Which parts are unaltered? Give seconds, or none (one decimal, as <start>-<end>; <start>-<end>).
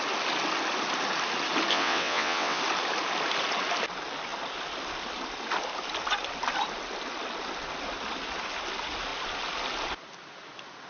0.0-1.7; 2.6-10.9